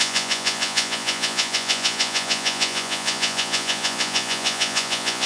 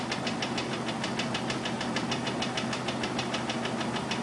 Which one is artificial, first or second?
first